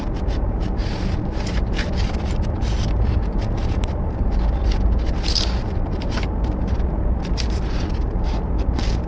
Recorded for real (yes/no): no